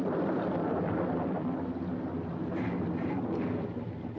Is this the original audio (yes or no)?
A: no